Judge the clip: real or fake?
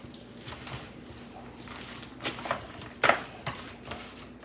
real